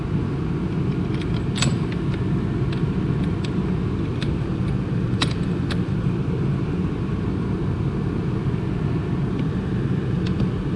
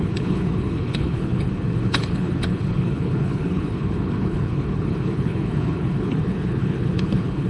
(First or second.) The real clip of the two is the first